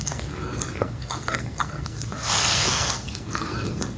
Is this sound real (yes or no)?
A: no